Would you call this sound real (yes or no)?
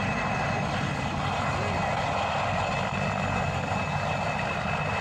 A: yes